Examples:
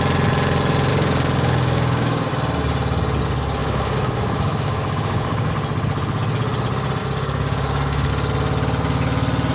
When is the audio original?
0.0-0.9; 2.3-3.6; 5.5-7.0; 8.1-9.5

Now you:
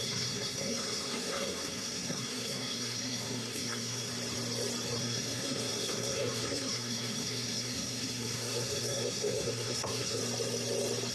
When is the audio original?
4.1-5.0; 10.2-11.1